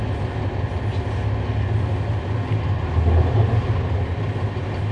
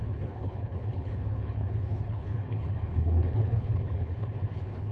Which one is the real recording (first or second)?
first